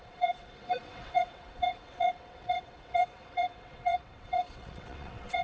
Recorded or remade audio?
remade